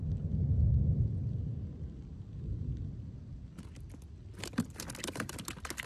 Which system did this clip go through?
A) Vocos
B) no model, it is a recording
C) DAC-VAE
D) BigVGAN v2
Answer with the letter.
B